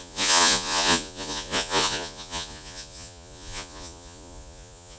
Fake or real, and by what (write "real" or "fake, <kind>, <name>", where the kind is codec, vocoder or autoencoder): fake, vocoder, Vocos